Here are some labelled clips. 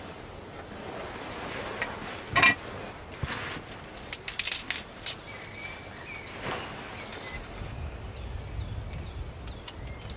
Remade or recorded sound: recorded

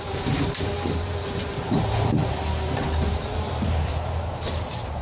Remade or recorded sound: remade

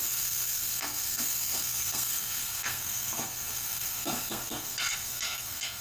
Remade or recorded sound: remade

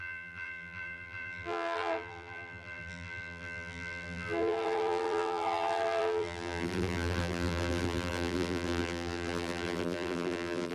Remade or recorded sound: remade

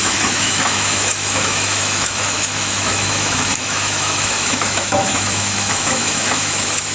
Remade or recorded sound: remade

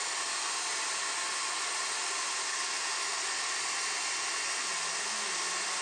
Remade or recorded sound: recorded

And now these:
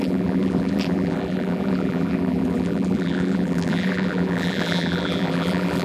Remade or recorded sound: remade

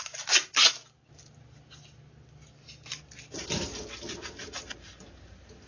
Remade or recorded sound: recorded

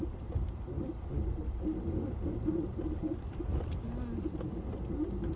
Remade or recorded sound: recorded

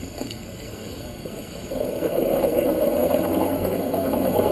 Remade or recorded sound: remade